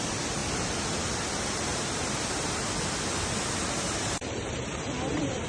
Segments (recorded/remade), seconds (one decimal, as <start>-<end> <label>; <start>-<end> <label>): 0.0-0.4 remade; 0.4-3.7 recorded; 3.7-5.5 remade